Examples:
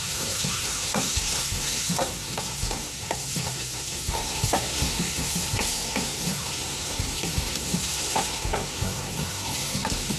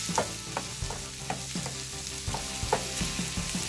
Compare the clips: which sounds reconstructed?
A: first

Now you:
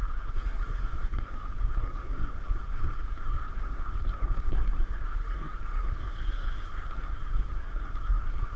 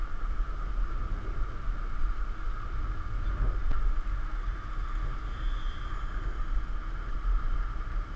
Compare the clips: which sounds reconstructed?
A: first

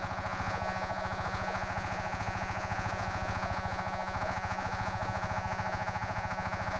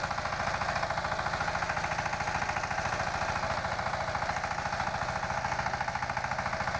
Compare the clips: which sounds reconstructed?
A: first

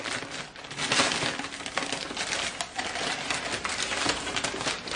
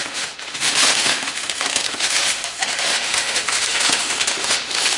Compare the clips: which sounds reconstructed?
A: second